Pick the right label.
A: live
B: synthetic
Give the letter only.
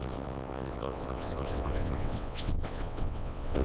B